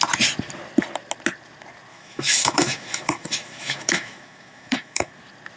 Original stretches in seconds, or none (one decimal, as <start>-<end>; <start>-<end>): 0.0-1.9; 5.1-5.6